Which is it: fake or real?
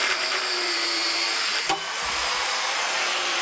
fake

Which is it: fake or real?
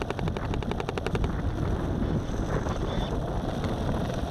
real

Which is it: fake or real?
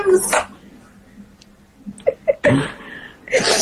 real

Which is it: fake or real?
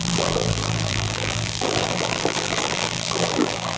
fake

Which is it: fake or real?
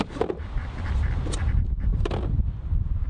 fake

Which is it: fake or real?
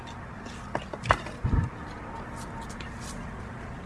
real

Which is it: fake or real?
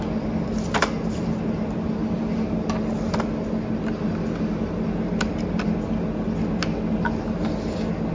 real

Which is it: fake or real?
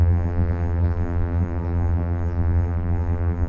fake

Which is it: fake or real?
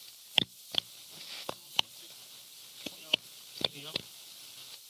fake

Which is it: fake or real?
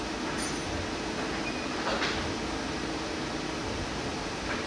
real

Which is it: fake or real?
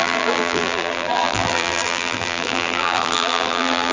fake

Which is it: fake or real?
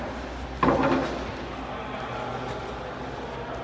real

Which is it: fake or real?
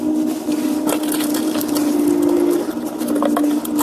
real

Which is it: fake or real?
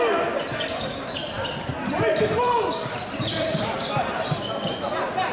fake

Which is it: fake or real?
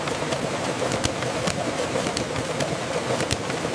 fake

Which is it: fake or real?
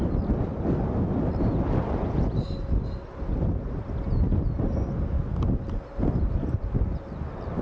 real